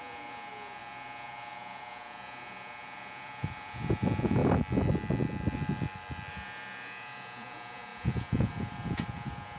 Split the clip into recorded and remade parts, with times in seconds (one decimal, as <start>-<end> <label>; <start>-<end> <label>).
0.0-4.4 remade; 4.4-6.3 recorded; 6.3-9.6 remade